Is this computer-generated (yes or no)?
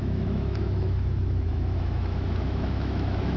yes